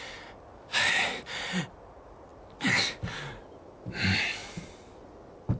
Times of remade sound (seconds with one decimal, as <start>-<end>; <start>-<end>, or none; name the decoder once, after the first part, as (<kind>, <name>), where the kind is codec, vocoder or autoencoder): none